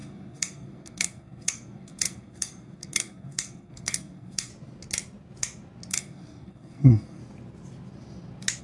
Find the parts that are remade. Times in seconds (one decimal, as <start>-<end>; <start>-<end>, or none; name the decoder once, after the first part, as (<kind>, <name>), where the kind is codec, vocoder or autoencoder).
0.0-4.5 (codec, SNAC); 5.9-7.2